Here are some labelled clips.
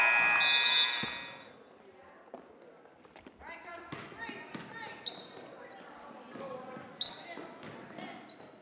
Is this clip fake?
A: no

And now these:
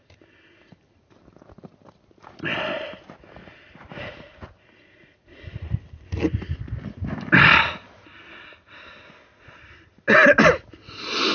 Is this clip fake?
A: no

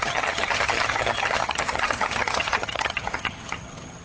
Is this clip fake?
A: yes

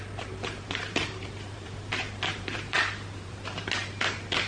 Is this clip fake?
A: yes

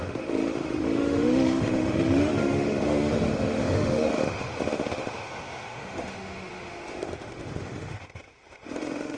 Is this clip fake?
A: yes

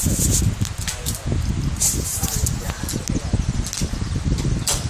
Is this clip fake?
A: no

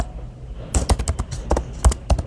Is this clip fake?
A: no